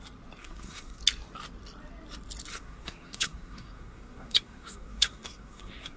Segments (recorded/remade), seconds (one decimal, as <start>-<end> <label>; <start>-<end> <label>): 0.0-0.4 recorded; 0.4-1.0 remade; 1.0-2.5 recorded; 2.5-6.0 remade